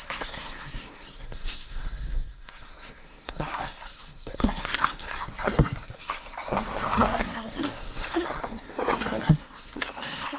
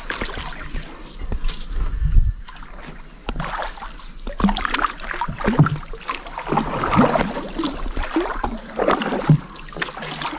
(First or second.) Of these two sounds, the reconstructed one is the first